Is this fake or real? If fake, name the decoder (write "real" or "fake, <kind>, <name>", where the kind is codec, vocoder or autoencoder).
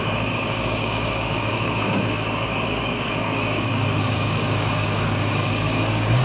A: fake, codec, DAC